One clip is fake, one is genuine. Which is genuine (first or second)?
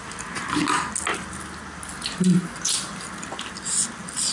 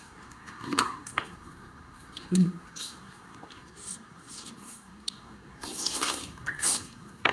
first